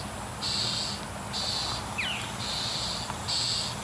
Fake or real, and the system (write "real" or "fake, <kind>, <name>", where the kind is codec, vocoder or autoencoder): real